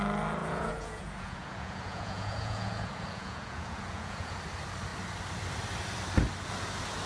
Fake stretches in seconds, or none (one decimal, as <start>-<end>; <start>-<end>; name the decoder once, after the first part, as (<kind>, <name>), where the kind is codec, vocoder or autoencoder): 0.4-4.3 (vocoder, Vocos)